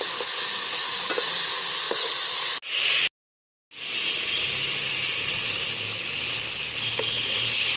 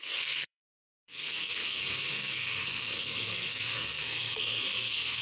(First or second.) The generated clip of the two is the second